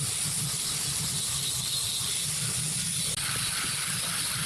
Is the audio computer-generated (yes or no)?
no